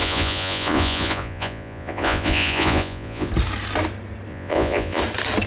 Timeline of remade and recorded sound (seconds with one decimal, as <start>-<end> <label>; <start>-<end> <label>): 0.0-3.3 remade; 3.3-4.3 recorded; 4.3-5.0 remade; 5.0-5.5 recorded